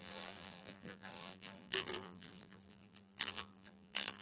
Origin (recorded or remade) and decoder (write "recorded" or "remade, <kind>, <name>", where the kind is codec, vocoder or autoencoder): remade, vocoder, BigVGAN v2